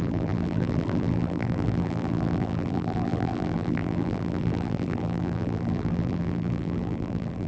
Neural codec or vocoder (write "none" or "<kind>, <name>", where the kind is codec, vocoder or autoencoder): vocoder, BigVGAN v2